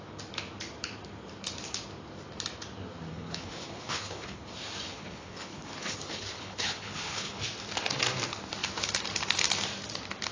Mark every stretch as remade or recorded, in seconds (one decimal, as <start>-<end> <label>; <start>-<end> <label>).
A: 0.0-3.1 recorded; 3.1-4.5 remade; 4.5-4.9 recorded; 4.9-7.4 remade; 7.4-10.3 recorded